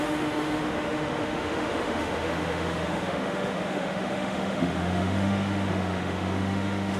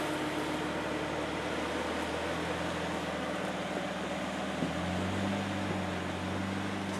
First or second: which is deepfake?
first